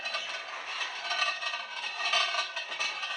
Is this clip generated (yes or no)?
no